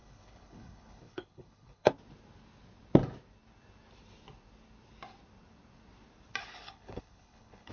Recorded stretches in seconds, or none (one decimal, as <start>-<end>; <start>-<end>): 1.9-6.4